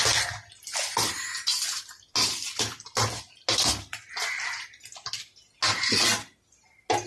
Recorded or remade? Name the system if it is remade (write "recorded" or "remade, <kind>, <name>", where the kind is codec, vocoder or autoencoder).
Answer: recorded